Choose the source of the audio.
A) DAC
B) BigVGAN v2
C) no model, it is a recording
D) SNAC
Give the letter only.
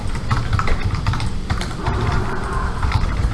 B